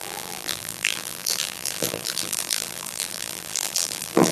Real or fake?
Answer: fake